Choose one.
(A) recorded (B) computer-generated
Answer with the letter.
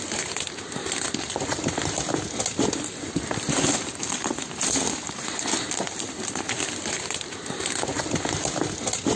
A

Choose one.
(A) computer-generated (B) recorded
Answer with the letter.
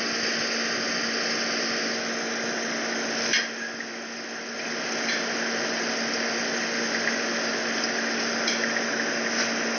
B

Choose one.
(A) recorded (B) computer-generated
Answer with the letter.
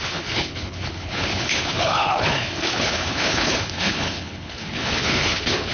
B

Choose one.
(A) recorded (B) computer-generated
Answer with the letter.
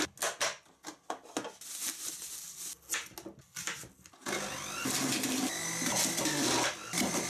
A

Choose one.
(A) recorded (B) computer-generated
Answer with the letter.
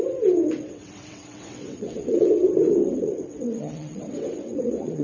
B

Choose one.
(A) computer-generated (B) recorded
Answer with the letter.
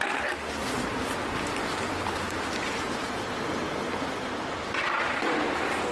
B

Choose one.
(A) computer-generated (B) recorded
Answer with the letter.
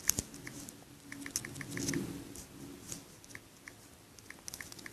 B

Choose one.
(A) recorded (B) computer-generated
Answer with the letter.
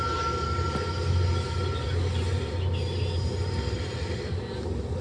A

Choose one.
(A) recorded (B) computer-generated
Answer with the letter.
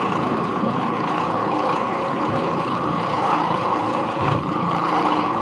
B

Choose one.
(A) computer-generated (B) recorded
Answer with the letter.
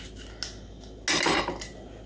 B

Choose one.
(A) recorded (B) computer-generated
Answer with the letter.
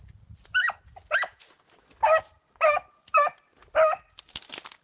A